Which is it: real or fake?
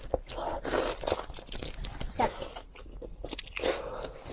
real